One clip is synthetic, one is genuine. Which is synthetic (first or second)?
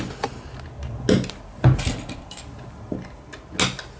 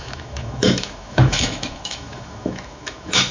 second